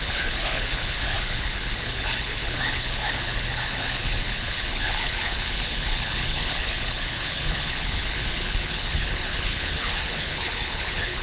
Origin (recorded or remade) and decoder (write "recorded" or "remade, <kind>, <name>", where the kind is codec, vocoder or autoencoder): remade, codec, HILCodec